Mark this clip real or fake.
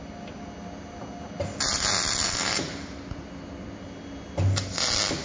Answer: real